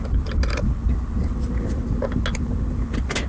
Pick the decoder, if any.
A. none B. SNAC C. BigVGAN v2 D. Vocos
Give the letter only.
A